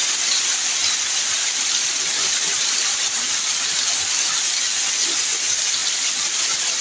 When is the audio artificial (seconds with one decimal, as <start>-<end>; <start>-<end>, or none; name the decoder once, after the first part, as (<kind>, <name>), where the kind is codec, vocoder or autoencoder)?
0.8-3.0 (vocoder, BigVGAN v2); 5.8-6.8